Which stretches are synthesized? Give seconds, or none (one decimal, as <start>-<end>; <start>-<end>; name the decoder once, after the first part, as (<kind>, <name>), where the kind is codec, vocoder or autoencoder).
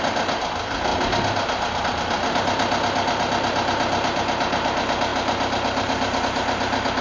5.1-6.2 (vocoder, BigVGAN v2)